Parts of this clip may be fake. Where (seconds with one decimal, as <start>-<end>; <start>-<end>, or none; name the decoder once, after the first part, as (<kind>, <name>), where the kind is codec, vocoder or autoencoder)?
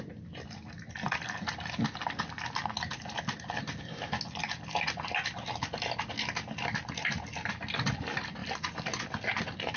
8.4-9.0 (vocoder, BigVGAN v2)